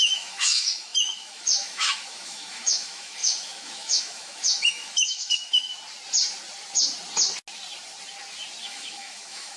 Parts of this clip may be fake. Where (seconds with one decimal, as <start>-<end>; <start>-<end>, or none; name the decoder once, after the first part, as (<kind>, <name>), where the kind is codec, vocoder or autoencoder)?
0.0-5.7 (autoencoder, DAC-VAE); 8.6-9.6